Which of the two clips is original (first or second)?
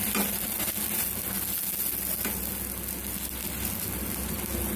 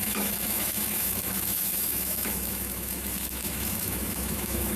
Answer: first